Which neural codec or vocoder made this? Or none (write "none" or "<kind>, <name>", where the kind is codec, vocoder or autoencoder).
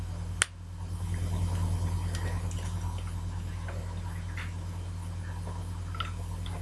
none